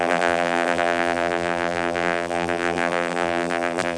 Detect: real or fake fake